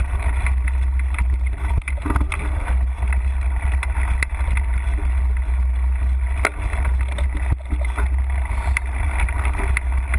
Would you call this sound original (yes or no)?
yes